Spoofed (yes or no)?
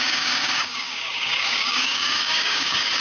yes